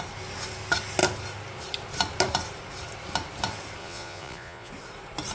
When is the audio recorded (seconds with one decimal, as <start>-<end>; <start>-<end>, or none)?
0.0-3.8; 4.7-5.3